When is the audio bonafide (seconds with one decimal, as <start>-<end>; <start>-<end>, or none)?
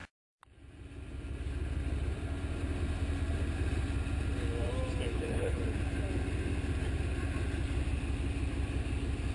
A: 0.0-5.1; 5.6-9.3